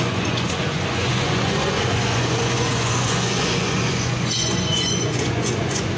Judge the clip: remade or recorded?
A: remade